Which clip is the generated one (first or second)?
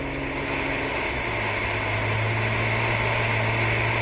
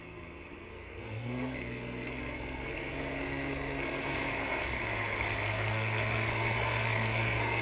second